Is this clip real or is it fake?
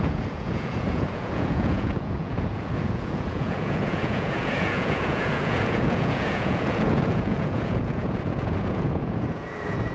fake